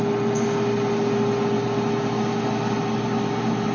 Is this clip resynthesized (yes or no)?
no